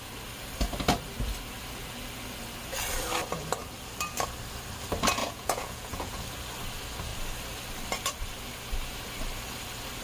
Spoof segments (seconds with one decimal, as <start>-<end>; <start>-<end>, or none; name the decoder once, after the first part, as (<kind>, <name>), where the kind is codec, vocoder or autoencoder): 5.2-6.2 (vocoder, Vocos)